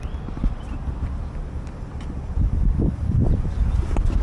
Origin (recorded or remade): recorded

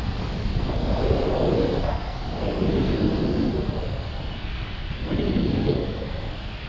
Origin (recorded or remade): remade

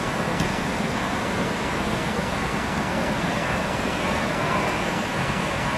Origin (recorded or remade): remade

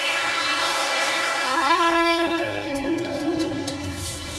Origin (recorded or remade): remade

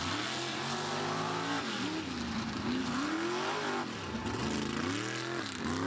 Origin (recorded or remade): recorded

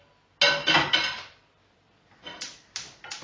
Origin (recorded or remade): recorded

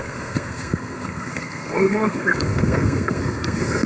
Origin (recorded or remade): remade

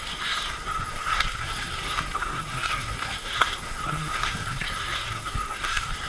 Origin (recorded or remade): remade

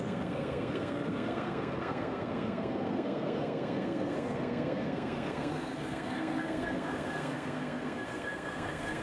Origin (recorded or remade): remade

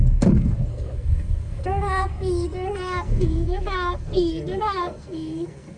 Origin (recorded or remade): remade